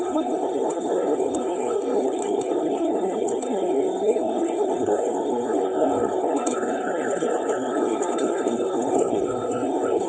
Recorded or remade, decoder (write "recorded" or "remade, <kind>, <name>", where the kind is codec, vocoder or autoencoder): remade, codec, SNAC